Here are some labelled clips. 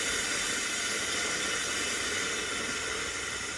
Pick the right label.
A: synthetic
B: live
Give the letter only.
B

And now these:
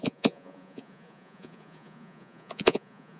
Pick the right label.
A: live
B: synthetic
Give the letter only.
B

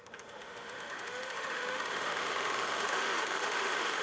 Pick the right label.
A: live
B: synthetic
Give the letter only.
B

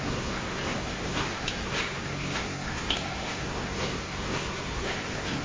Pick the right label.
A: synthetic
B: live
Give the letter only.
A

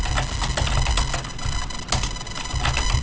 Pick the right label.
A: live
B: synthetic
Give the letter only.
A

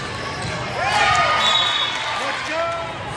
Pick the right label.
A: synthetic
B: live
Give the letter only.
B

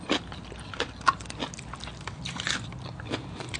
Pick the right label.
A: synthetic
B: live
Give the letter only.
B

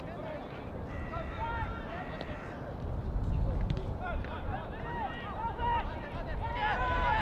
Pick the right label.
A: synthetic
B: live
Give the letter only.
B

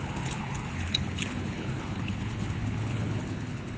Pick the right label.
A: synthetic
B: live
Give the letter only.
A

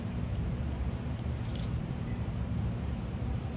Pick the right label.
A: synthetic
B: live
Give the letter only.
A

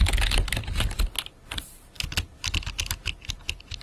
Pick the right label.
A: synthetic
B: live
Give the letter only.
B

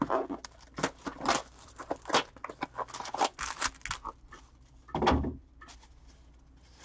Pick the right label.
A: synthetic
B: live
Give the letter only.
B